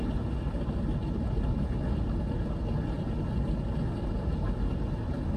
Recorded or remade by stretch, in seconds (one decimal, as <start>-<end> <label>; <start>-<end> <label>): 0.0-5.4 recorded